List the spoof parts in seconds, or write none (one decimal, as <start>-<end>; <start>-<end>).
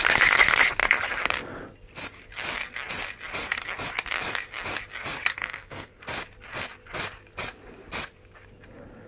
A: 5.3-6.0